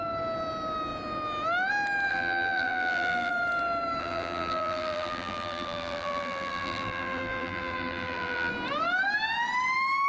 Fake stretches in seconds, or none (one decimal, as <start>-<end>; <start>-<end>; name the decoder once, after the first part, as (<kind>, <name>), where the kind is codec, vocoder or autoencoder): 2.1-3.3 (vocoder, BigVGAN v2); 4.0-8.5